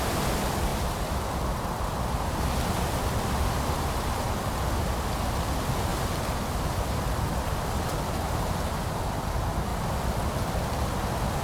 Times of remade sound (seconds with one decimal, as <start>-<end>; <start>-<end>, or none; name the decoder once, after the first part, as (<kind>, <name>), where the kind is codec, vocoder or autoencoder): 5.9-9.0 (vocoder, BigVGAN v2)